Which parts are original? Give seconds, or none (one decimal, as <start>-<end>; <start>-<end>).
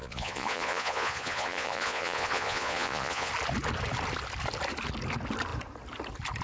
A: 3.3-6.4